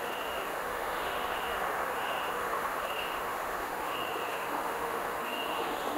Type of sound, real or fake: fake